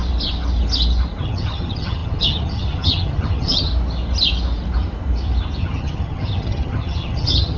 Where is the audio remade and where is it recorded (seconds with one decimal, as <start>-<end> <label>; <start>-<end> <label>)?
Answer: 0.0-1.2 recorded; 1.2-3.7 remade; 3.7-5.6 recorded; 5.6-7.6 remade